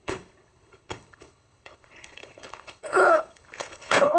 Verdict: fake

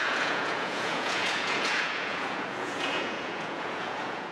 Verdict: fake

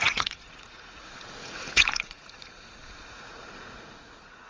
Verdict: fake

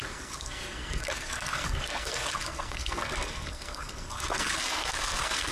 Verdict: fake